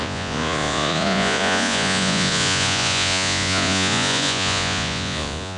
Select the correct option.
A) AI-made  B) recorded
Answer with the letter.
A